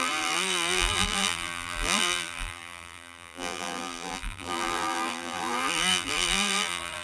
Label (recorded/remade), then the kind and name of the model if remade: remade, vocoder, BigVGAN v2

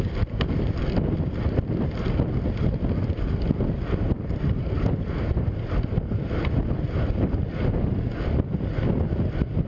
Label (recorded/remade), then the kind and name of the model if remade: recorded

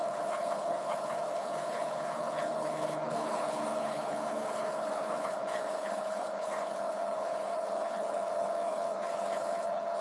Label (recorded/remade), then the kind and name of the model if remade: remade, codec, HILCodec